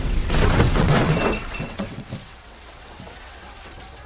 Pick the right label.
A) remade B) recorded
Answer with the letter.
A